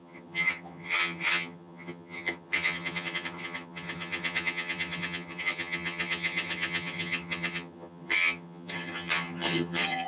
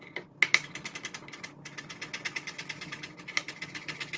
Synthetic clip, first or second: first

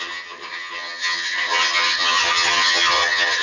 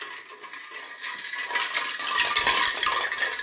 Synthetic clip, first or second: first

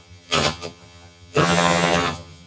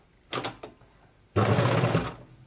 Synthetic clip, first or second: first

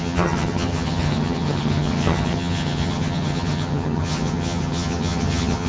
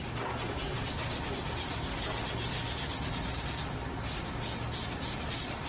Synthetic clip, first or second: first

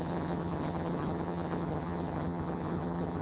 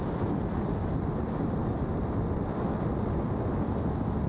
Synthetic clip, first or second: first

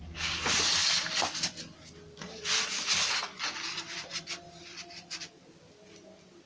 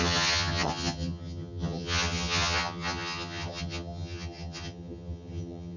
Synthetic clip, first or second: second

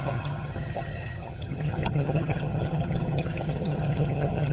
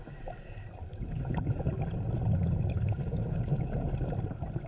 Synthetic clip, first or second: first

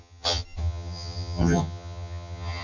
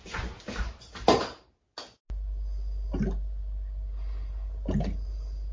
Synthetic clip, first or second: first